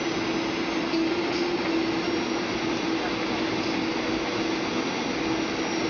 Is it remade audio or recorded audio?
recorded